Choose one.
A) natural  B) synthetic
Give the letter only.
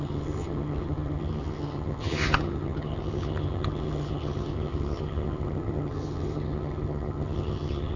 B